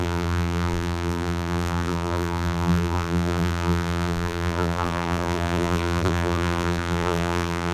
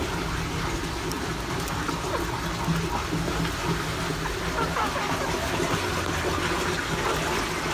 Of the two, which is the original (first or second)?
second